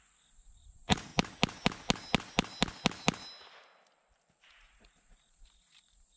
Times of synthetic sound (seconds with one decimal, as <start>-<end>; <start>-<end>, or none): 0.0-1.1; 4.5-6.2